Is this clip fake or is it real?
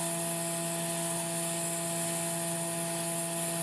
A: real